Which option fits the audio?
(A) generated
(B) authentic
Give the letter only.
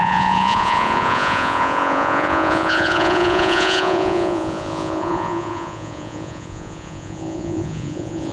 A